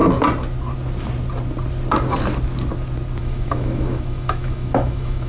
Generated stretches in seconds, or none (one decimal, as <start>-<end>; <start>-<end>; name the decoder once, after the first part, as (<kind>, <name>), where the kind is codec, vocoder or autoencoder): 3.2-5.3 (autoencoder, DAC-VAE)